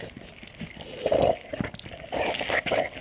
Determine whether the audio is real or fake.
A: real